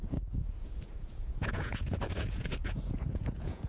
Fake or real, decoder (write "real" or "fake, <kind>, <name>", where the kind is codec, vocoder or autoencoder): fake, vocoder, Vocos